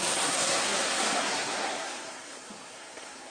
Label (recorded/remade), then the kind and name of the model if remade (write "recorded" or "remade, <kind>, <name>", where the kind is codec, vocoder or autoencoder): remade, codec, SNAC